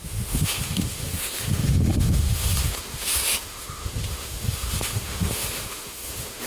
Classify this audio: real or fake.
fake